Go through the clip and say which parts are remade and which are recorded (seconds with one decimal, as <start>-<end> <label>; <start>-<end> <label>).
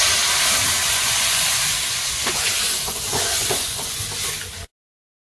0.0-0.8 recorded; 0.8-4.0 remade; 4.0-5.4 recorded